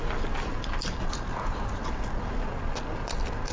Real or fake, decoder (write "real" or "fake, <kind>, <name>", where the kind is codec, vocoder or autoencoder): real